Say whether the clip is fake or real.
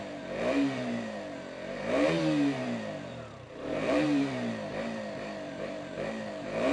fake